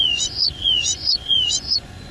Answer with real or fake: fake